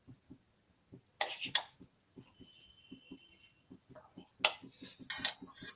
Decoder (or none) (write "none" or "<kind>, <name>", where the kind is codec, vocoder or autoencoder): none